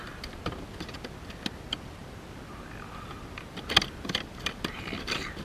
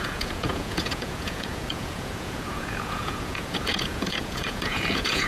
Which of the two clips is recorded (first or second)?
first